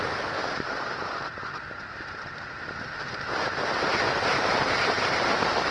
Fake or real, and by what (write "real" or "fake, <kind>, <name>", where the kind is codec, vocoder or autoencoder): fake, vocoder, BigVGAN v2